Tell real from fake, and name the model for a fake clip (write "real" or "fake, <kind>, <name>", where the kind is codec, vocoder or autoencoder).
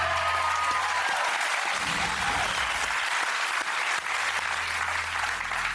real